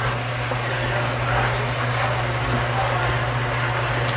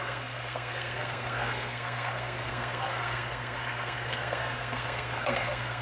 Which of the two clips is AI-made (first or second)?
second